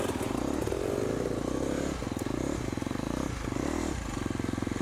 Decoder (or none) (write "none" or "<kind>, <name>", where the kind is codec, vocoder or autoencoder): none